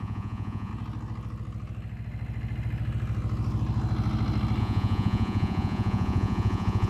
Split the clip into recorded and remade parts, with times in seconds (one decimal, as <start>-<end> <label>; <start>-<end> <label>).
0.0-0.7 remade; 0.7-4.6 recorded; 4.6-6.9 remade